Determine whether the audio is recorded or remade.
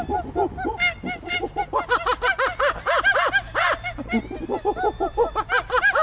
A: recorded